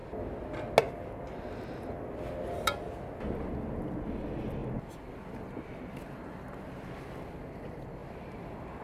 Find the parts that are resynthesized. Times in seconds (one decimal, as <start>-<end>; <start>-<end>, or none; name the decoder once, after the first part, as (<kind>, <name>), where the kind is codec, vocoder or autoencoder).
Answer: none